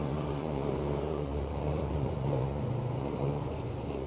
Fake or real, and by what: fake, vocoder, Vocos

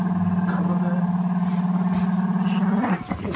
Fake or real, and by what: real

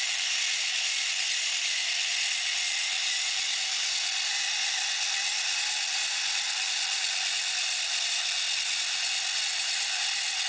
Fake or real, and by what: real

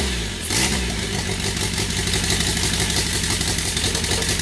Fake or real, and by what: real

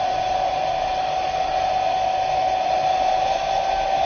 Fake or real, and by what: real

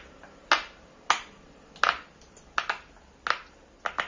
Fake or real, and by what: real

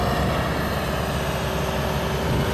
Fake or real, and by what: real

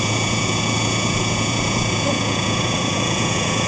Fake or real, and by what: fake, vocoder, Vocos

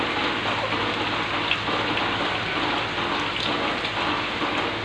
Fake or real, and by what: real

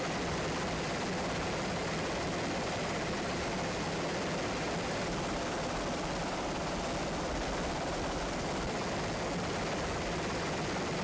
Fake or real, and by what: real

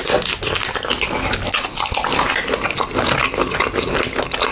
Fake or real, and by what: real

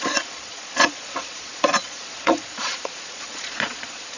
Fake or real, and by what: fake, vocoder, Vocos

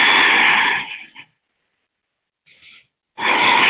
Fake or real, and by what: real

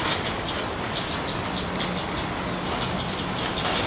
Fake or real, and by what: real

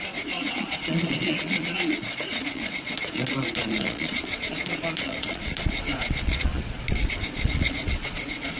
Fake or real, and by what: fake, vocoder, Vocos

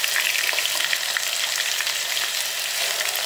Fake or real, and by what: real